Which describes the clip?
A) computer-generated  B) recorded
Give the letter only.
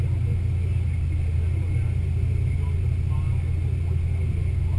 B